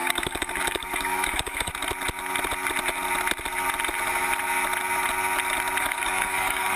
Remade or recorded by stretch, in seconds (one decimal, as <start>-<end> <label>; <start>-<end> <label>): 0.0-1.7 remade; 1.7-5.8 recorded; 5.8-6.8 remade